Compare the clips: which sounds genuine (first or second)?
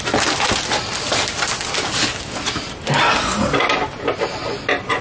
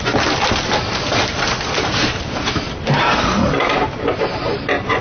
first